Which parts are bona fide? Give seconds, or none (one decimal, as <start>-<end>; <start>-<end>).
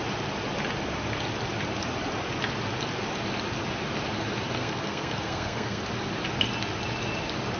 0.0-4.6; 5.8-7.6